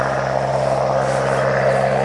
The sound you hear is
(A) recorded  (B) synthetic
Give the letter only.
A